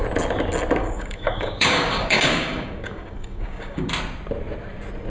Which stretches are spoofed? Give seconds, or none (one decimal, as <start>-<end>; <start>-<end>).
0.8-3.9